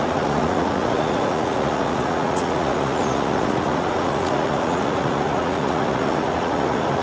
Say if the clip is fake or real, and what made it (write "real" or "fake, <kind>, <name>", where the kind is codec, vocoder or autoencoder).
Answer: fake, vocoder, Vocos